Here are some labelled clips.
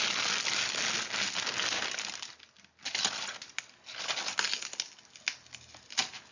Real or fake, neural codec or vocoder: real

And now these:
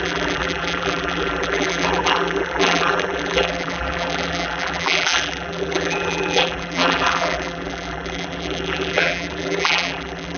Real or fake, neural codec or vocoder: fake, vocoder, BigVGAN v2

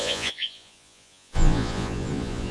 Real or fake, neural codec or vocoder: fake, vocoder, Vocos